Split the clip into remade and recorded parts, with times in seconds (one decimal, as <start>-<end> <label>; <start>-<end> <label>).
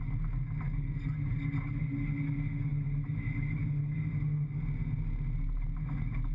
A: 0.0-6.3 recorded